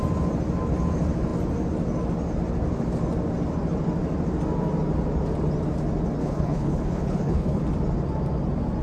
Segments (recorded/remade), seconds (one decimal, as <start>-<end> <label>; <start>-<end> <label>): 0.0-6.2 recorded; 6.2-7.6 remade; 7.6-8.8 recorded